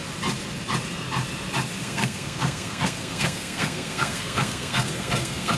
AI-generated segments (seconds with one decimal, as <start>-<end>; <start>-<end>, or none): 1.8-5.6